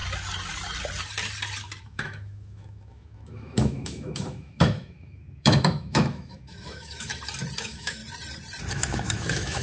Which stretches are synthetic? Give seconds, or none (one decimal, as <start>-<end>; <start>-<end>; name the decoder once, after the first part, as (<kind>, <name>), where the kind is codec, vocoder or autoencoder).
1.8-7.1 (autoencoder, DAC-VAE); 7.6-8.0; 8.7-9.6